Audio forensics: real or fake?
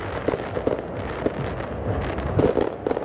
real